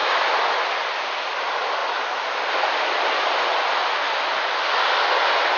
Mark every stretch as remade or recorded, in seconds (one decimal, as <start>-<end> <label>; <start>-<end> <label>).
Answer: 0.0-5.6 recorded